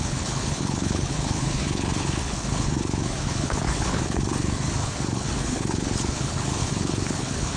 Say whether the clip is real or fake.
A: fake